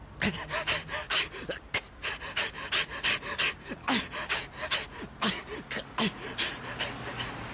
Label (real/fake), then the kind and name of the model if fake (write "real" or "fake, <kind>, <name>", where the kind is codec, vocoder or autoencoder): real